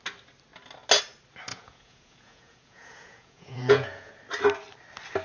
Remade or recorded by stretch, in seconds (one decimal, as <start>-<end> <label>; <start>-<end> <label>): 0.0-1.5 recorded; 1.5-4.1 remade; 4.1-5.2 recorded